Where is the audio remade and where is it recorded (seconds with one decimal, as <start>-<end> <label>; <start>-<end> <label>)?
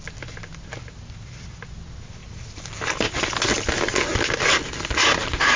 0.0-2.2 recorded; 2.2-5.6 remade